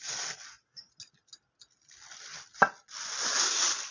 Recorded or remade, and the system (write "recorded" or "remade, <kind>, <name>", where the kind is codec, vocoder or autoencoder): recorded